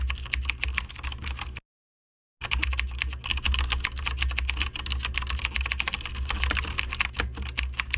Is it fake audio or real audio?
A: real